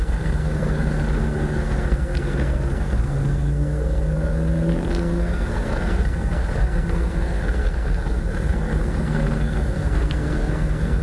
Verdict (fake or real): fake